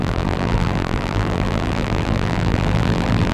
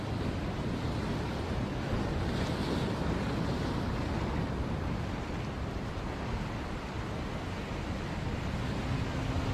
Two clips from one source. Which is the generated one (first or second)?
first